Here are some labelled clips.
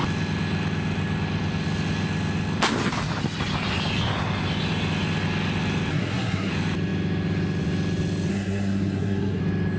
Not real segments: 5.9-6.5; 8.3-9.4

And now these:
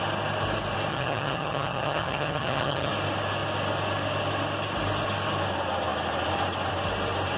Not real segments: 0.9-2.9

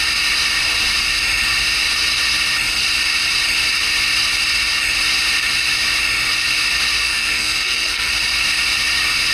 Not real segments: 7.0-8.1